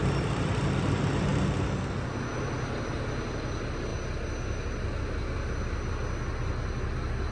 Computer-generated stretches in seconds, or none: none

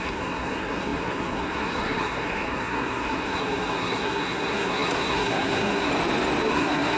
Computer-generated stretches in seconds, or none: 0.0-5.9 (codec, SNAC); 6.5-7.0

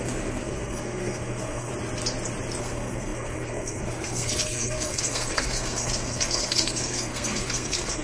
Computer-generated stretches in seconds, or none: 0.0-1.7 (codec, SNAC); 2.6-8.0

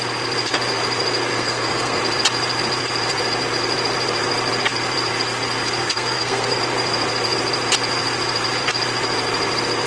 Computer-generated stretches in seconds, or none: 1.3-2.0 (codec, SNAC); 5.8-6.6

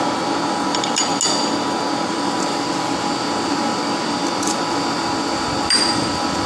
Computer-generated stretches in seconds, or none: none

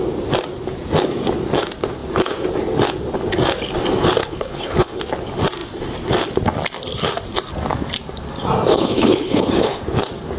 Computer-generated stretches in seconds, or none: 4.2-5.0 (codec, HILCodec); 8.7-9.8

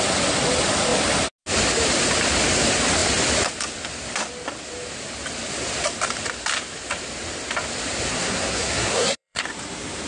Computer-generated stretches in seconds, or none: 8.1-9.4 (codec, SNAC)